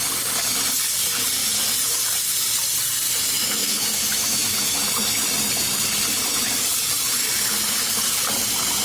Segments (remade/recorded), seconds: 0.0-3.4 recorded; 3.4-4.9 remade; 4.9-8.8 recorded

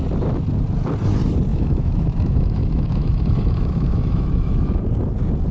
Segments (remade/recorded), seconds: 0.0-1.5 recorded; 1.5-4.8 remade; 4.8-5.5 recorded

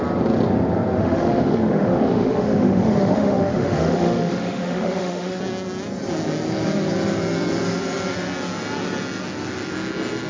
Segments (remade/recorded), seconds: 0.0-1.0 recorded; 1.0-5.4 remade; 5.4-10.3 recorded

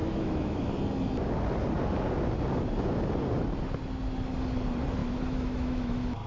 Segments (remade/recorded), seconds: 0.0-0.7 remade; 0.7-5.0 recorded; 5.0-6.3 remade